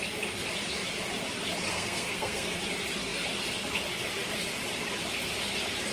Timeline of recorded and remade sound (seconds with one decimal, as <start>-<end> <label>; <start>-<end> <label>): 0.0-1.7 recorded; 1.7-2.5 remade; 2.5-5.9 recorded